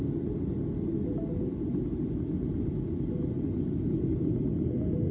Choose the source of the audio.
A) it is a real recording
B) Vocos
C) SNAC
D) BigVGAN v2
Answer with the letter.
A